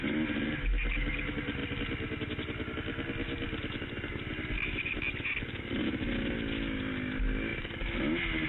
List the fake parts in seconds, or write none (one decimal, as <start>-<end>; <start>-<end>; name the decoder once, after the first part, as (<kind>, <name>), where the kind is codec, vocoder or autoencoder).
none